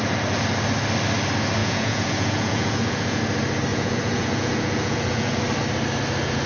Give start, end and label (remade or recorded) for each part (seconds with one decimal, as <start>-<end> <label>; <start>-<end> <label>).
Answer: 0.0-1.6 recorded; 1.6-3.2 remade; 3.2-3.7 recorded; 3.7-5.4 remade; 5.4-6.5 recorded